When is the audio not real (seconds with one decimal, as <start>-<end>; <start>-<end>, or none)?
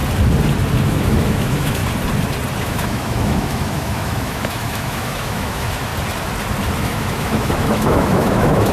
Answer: 0.8-1.8; 2.6-5.9; 6.8-8.7